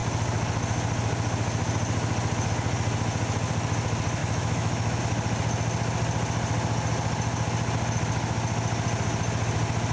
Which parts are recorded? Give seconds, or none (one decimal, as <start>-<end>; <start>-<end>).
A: 0.0-4.2; 5.0-9.9